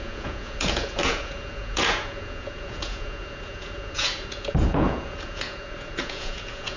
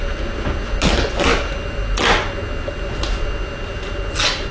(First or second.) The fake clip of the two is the first